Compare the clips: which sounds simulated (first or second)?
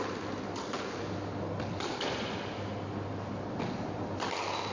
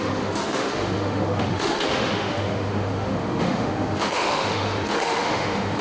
second